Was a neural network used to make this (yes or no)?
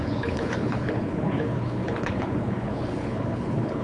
yes